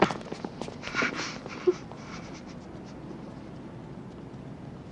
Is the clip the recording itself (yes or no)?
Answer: yes